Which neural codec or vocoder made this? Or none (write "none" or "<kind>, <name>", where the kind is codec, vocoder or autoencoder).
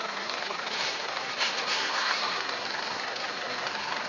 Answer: codec, SNAC